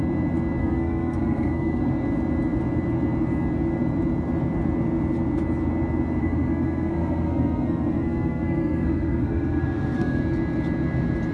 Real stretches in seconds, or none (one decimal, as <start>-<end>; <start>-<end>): 0.0-0.6; 1.8-6.2; 10.2-11.3